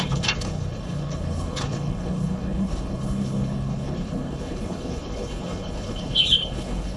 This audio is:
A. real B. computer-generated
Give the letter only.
B